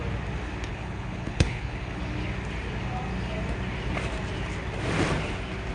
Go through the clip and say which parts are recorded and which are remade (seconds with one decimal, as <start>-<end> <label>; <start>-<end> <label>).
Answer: 0.0-0.7 recorded; 0.7-2.0 remade; 2.0-5.7 recorded